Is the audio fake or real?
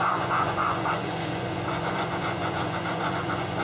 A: fake